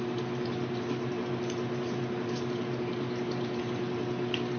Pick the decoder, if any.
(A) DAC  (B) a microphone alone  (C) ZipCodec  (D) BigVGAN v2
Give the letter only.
B